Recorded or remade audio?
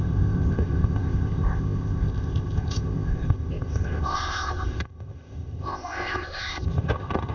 remade